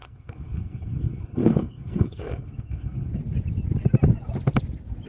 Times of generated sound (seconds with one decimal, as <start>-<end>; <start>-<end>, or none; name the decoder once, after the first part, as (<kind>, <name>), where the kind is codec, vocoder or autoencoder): 0.0-3.1 (codec, SNAC)